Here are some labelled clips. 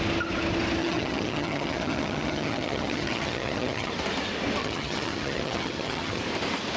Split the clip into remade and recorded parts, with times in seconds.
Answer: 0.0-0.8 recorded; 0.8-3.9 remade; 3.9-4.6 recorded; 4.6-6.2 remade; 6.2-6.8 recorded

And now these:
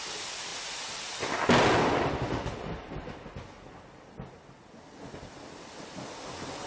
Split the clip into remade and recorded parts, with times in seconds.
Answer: 0.0-6.7 recorded

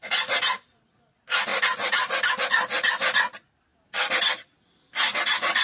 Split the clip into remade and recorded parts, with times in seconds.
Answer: 0.0-5.6 recorded

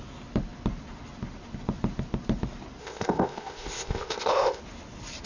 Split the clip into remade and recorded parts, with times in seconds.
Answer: 0.0-2.8 recorded; 2.8-4.6 remade; 4.6-5.3 recorded

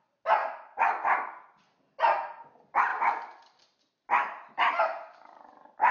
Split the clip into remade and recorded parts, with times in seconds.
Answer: 0.0-5.9 recorded

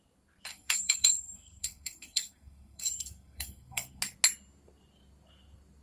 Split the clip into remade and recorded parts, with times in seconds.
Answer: 0.0-0.5 recorded; 0.5-4.0 remade; 4.0-5.8 recorded

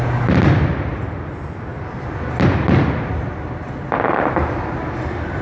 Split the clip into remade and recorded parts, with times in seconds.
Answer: 0.0-5.4 recorded

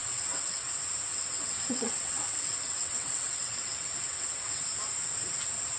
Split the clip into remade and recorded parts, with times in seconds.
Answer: 0.0-0.7 remade; 0.7-1.1 recorded; 1.1-4.6 remade; 4.6-5.8 recorded